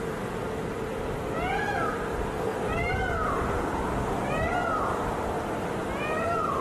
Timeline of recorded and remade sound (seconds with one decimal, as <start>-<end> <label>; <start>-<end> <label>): 0.0-6.6 remade